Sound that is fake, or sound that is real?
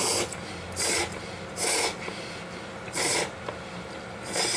real